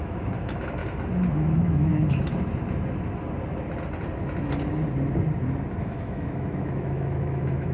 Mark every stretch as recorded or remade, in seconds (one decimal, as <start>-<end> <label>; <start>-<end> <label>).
0.0-0.8 remade; 0.8-1.3 recorded; 1.3-1.9 remade; 1.9-5.8 recorded; 5.8-7.7 remade